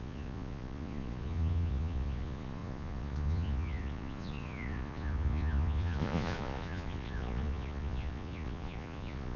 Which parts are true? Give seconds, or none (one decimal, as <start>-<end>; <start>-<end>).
none